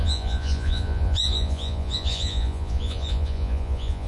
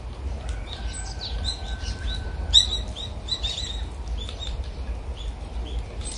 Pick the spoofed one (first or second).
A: first